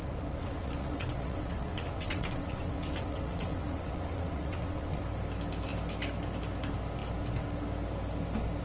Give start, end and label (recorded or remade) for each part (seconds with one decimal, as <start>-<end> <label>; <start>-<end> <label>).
0.0-5.0 remade; 5.0-8.6 recorded